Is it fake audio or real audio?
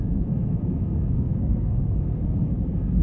fake